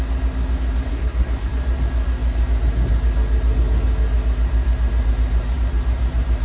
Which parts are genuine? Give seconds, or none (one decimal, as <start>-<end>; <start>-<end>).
0.0-0.9; 1.5-6.4